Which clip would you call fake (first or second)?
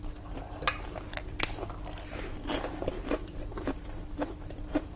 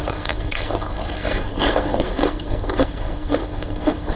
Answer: second